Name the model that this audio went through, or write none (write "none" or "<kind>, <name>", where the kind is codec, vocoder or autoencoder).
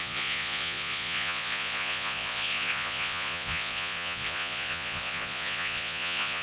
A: vocoder, Vocos